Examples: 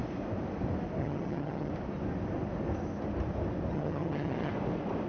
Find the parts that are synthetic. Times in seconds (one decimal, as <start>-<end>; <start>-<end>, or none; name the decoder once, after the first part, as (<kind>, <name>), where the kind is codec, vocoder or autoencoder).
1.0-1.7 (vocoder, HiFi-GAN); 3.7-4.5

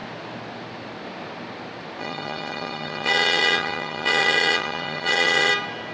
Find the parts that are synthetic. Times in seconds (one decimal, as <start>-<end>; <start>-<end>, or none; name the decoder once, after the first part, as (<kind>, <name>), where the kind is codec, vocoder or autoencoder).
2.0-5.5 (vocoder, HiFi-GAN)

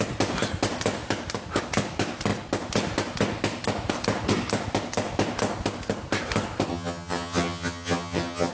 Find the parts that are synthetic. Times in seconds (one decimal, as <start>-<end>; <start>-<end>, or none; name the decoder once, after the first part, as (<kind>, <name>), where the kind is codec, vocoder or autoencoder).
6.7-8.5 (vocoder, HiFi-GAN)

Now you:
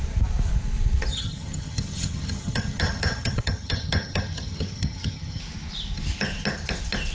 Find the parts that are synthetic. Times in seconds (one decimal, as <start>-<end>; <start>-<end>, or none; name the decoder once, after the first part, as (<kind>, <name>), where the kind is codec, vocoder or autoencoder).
1.1-5.4 (vocoder, HiFi-GAN)

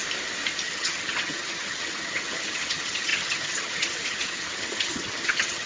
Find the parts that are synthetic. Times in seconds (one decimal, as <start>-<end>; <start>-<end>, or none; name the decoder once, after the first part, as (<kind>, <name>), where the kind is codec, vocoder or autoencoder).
0.6-5.7 (vocoder, HiFi-GAN)